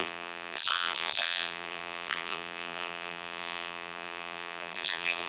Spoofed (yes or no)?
yes